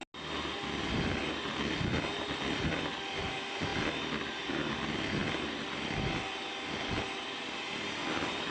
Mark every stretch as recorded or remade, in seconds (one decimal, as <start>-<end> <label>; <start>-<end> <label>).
0.0-8.5 recorded